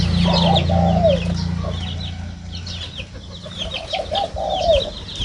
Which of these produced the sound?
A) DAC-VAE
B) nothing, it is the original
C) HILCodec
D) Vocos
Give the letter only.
B